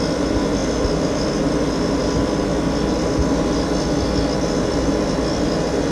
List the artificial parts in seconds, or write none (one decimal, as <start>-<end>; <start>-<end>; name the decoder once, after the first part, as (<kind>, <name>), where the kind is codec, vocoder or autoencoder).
none